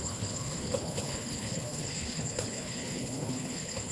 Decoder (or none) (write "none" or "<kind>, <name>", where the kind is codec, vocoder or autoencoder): codec, HILCodec